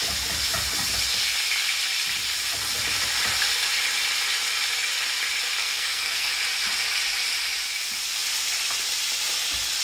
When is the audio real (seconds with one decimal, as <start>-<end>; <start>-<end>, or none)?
0.0-5.6; 6.3-9.8